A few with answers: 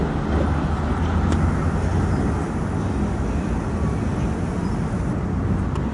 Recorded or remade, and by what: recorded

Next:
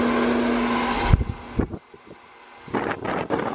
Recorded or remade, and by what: recorded